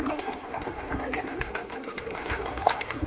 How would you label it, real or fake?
fake